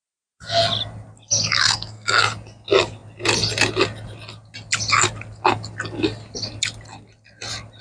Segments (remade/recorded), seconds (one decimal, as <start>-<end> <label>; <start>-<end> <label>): 0.0-1.6 recorded; 1.6-2.2 remade; 2.2-7.8 recorded